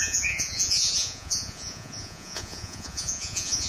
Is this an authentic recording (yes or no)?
no